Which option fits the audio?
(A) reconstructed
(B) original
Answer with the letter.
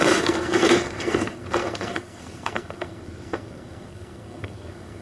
A